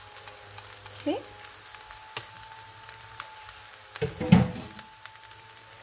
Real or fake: real